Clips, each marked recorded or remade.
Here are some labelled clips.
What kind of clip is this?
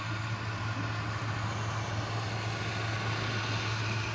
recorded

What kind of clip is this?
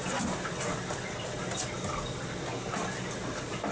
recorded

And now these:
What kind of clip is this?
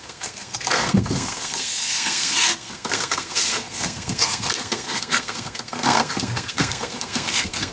remade